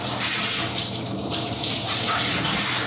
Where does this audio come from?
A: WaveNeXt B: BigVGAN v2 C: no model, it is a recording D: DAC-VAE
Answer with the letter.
B